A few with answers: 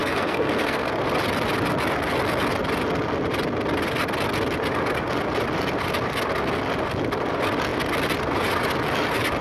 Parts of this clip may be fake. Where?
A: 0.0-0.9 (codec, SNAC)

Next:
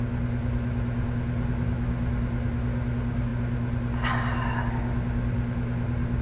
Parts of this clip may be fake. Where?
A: none

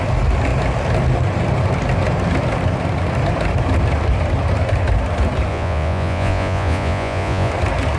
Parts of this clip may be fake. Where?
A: 5.5-7.5 (vocoder, Vocos)

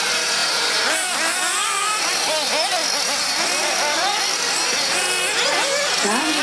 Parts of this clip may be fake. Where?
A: none

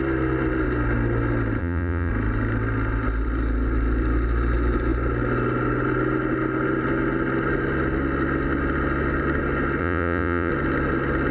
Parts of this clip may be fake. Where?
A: 1.6-2.1 (vocoder, Vocos); 9.8-10.5

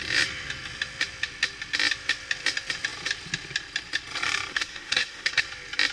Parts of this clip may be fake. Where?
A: 4.5-5.4 (codec, SNAC)

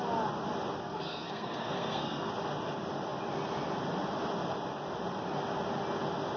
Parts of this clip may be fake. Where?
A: 0.8-2.3 (codec, SNAC)